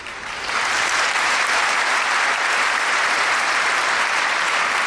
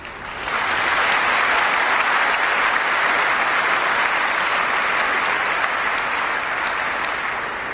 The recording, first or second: second